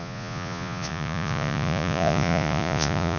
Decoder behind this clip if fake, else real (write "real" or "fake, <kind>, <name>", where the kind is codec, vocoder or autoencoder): fake, vocoder, Vocos